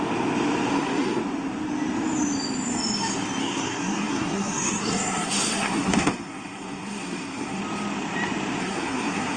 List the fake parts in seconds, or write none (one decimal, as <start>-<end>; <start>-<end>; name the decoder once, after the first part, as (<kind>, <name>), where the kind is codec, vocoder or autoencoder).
0.7-1.2 (codec, SNAC); 3.4-7.6; 8.6-9.4

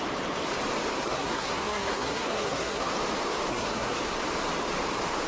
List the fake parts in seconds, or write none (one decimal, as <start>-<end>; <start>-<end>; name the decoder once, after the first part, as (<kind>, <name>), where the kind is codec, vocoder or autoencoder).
1.0-2.9 (codec, SNAC); 3.5-4.0